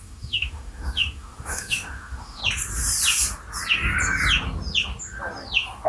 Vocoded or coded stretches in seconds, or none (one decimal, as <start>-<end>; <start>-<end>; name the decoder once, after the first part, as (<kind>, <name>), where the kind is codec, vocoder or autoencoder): 0.0-2.4 (autoencoder, DAC-VAE)